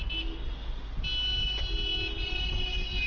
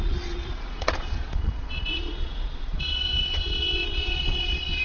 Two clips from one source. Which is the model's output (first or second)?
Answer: second